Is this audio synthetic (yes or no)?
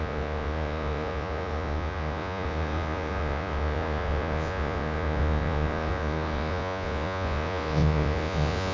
yes